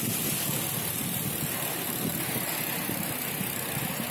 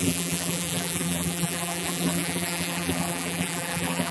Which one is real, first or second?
first